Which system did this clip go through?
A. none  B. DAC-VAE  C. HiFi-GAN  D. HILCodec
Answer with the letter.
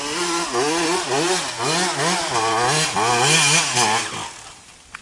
A